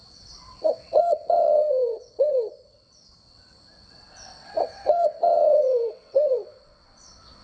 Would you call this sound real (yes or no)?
no